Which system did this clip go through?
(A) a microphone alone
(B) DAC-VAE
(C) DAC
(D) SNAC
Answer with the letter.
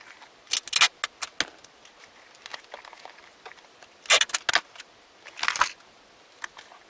A